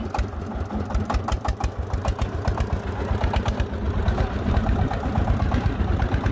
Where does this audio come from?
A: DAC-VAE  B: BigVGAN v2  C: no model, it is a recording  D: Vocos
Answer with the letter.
C